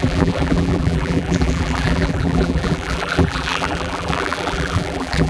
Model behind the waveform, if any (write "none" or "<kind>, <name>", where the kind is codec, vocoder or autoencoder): vocoder, BigVGAN v2